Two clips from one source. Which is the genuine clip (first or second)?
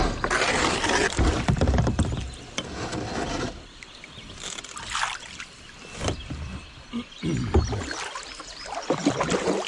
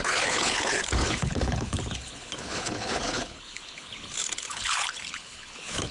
first